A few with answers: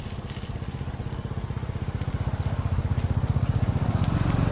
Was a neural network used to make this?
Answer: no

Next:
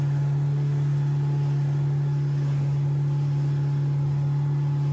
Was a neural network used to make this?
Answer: no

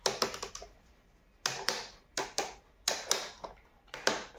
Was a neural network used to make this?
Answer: no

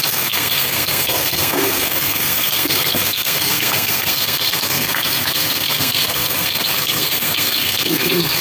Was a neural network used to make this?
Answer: yes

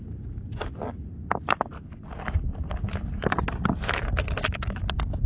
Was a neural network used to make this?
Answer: no